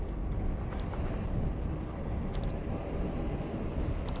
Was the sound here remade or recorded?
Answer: recorded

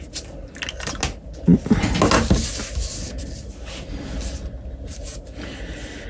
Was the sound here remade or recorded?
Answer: recorded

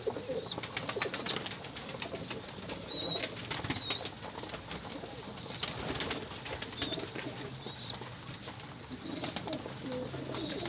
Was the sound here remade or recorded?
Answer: recorded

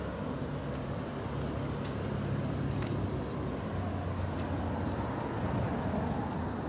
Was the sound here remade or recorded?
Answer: recorded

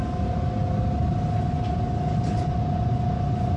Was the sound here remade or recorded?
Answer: recorded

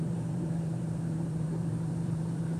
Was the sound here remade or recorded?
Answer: remade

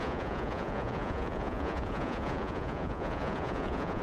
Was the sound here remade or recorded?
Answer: remade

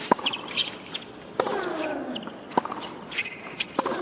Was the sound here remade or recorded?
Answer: recorded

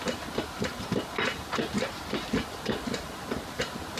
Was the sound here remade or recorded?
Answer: recorded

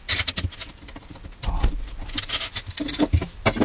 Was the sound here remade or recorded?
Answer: recorded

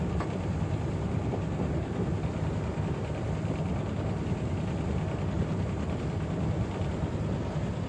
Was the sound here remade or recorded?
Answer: recorded